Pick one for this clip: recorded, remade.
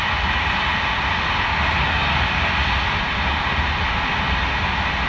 recorded